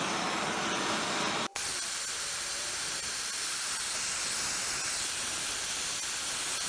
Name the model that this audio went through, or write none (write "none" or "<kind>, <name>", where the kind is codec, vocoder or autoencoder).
none